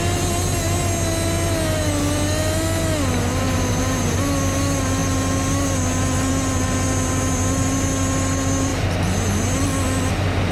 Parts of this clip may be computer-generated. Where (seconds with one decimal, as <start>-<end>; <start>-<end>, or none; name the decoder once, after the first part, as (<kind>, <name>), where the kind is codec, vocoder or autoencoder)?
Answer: 3.3-4.2 (vocoder, BigVGAN v2)